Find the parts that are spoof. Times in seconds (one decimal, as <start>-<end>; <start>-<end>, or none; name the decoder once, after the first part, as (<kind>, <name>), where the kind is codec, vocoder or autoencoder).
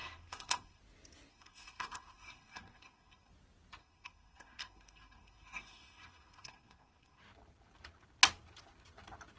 0.0-0.8 (codec, SNAC); 1.3-3.3; 3.8-7.2